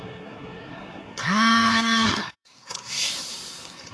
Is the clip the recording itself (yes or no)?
no